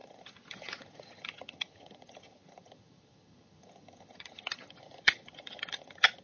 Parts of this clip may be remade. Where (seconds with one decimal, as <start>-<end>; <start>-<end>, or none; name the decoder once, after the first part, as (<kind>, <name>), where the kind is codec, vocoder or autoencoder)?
0.0-6.2 (vocoder, HiFi-GAN)